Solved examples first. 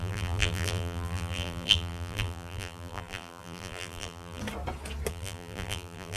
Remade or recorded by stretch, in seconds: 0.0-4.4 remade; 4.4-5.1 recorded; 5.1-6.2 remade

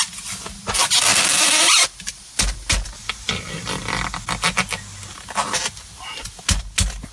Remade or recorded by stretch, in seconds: 0.0-5.1 recorded; 5.1-5.9 remade; 5.9-7.1 recorded